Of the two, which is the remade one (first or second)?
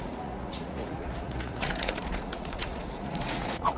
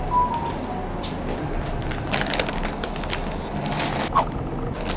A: first